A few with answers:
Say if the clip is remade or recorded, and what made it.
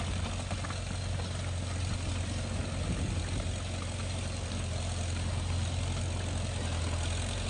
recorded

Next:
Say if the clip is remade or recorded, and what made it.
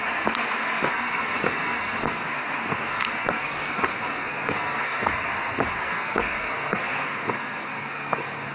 remade, codec, SNAC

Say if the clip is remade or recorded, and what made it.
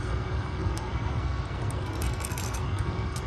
remade, codec, SNAC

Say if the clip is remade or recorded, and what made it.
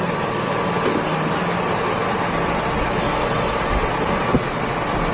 recorded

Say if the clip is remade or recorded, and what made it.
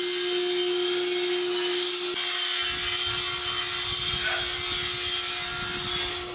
recorded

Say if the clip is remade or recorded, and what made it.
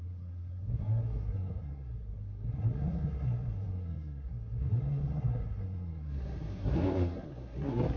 remade, codec, SNAC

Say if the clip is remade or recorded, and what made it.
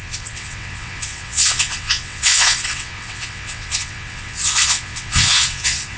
remade, vocoder, WaveNeXt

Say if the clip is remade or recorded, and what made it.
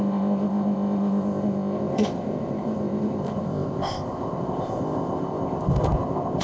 remade, codec, ZipCodec